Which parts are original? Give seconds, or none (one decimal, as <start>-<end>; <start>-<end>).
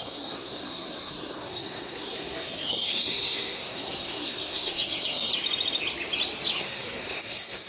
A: 5.3-6.6